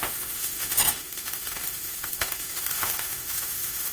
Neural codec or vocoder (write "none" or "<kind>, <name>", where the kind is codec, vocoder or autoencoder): autoencoder, DAC-VAE